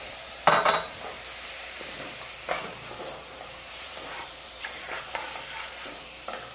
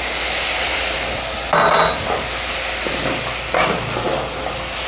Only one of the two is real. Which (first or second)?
second